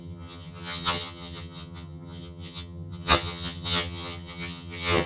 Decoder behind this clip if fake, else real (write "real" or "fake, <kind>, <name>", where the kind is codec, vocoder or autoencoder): fake, vocoder, HiFi-GAN